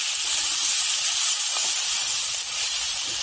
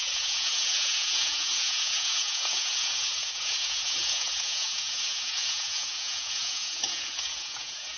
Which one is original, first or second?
first